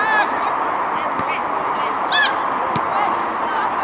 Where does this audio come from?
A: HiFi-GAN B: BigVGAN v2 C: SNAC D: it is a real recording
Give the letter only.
D